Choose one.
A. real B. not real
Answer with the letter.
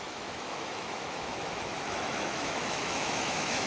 B